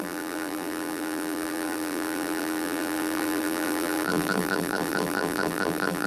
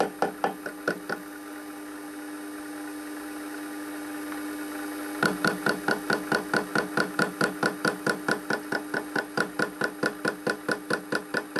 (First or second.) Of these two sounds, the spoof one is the first